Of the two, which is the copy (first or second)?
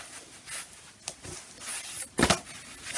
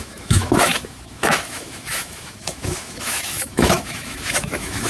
second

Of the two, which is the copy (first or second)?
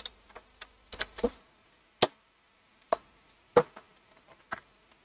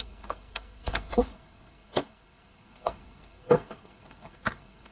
second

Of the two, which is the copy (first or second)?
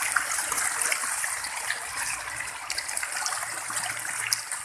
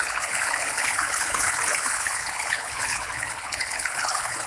second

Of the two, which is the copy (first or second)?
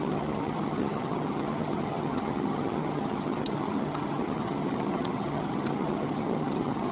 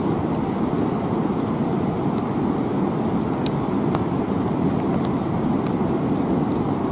first